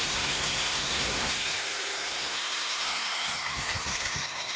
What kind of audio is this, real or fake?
fake